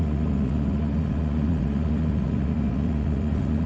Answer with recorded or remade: remade